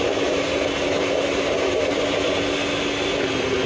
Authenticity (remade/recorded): recorded